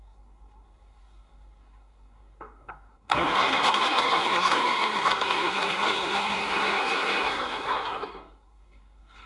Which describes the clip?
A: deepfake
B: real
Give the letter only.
A